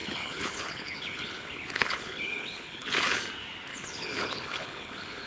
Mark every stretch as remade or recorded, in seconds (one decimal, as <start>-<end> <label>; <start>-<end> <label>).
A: 0.0-3.2 remade; 3.2-3.7 recorded; 3.7-5.3 remade